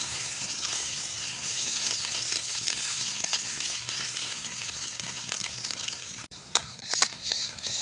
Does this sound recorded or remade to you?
remade